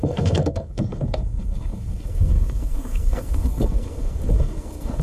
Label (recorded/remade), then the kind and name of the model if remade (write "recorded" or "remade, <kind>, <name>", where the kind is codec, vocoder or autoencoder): remade, codec, SNAC